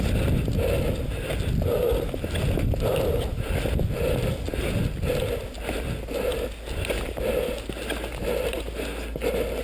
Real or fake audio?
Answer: real